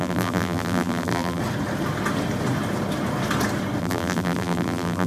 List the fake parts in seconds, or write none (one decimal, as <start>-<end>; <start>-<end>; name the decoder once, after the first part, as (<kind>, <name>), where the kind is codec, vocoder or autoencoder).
0.0-1.4 (vocoder, BigVGAN v2); 3.8-5.1